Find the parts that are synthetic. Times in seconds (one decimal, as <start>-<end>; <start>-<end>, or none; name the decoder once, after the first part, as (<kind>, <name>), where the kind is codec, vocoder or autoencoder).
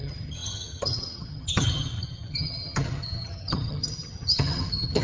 0.0-5.0 (vocoder, HiFi-GAN)